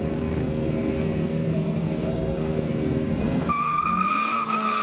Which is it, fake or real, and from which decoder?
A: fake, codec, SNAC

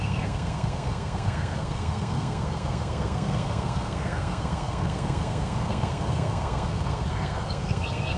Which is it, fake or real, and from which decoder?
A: fake, codec, SNAC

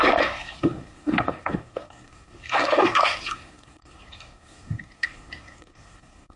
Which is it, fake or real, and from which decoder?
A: fake, codec, SNAC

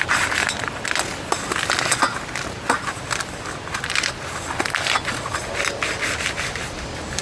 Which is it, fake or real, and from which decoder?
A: real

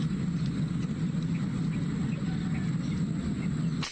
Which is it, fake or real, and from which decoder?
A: real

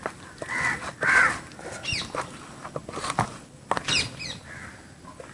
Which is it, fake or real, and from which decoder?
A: real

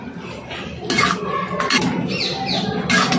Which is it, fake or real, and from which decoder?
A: real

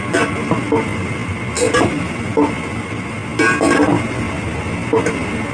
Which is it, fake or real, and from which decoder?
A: real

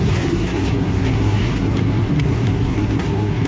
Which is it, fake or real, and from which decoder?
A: fake, codec, SNAC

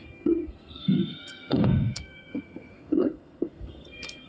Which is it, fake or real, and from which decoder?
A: fake, codec, SNAC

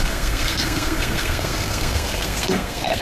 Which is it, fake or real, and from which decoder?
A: fake, codec, SNAC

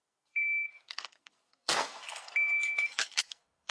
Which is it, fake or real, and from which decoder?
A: fake, codec, SNAC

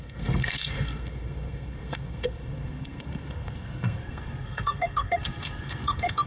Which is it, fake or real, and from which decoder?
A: fake, codec, SNAC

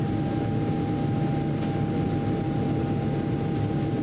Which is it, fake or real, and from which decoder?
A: real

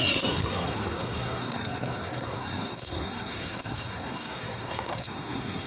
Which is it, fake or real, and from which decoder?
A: fake, codec, SNAC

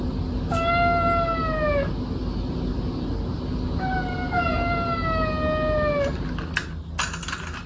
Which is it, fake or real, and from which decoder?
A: real